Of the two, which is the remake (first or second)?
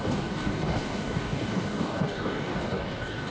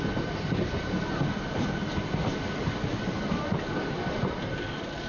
first